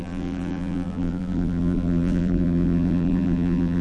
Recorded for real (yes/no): no